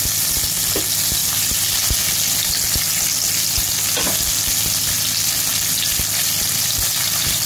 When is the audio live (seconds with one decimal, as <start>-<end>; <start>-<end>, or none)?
0.0-7.5